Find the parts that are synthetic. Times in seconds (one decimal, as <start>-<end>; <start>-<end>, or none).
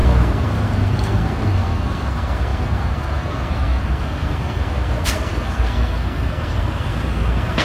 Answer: 0.0-7.6